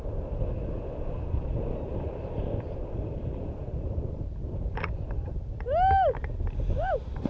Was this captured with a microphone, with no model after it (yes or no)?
yes